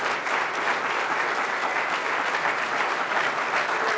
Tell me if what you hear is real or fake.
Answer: real